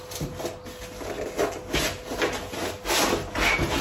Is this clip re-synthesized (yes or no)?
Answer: no